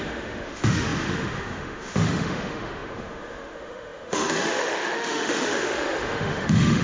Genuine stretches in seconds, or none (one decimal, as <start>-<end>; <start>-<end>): none